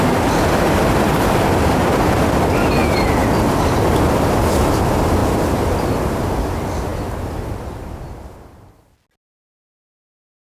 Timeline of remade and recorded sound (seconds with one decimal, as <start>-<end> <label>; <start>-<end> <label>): 0.0-10.5 recorded